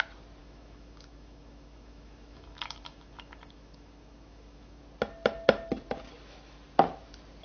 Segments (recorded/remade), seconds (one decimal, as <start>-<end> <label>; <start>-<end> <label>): 0.0-0.4 recorded; 0.4-4.8 remade; 4.8-7.4 recorded